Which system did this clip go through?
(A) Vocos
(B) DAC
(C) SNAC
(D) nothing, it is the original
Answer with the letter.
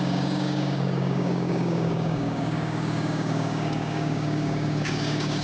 B